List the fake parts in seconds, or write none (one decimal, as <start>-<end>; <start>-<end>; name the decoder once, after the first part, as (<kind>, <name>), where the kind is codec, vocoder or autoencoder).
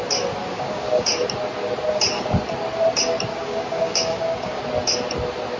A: 0.4-1.1 (codec, DAC); 3.3-4.6